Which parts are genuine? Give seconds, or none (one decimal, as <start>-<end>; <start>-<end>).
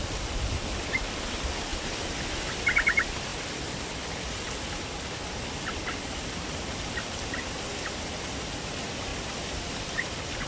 1.7-2.4; 9.1-9.9